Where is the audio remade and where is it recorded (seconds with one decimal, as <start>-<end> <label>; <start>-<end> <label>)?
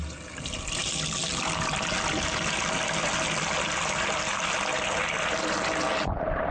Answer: 0.0-6.5 recorded